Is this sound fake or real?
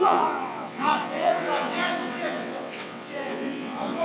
fake